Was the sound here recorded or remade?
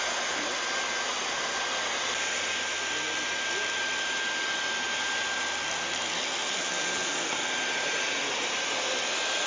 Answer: recorded